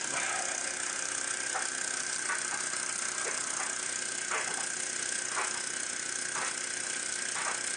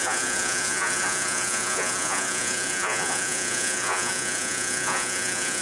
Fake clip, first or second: second